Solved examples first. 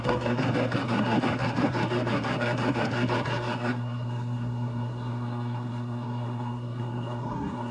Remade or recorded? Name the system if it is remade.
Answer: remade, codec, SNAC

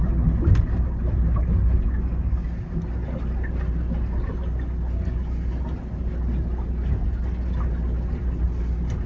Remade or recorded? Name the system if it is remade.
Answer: recorded